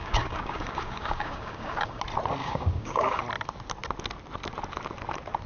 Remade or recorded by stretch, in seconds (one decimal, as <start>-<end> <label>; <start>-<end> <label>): 0.0-2.0 remade; 2.0-2.4 recorded; 2.4-3.2 remade; 3.2-5.5 recorded